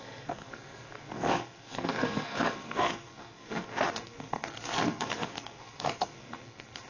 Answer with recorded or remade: remade